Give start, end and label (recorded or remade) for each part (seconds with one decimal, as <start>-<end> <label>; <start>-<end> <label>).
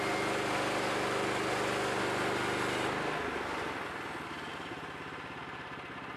0.0-6.2 recorded